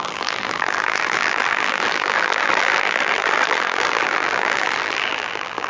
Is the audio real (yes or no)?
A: no